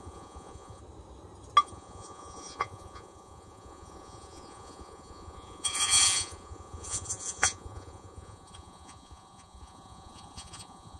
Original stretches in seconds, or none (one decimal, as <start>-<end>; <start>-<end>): 0.8-1.6